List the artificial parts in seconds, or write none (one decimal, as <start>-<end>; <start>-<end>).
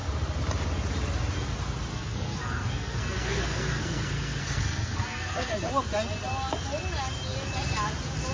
1.9-5.7